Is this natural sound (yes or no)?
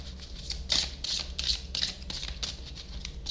yes